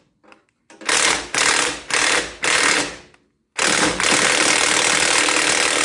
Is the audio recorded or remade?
recorded